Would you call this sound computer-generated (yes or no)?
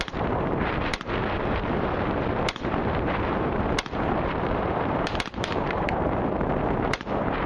yes